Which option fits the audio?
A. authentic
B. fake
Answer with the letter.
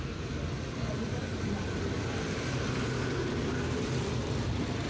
B